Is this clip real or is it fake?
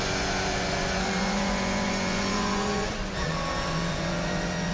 fake